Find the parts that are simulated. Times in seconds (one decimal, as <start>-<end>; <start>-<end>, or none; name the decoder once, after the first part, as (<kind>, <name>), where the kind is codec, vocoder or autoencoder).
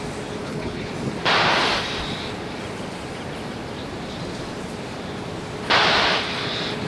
0.4-0.9 (codec, HILCodec)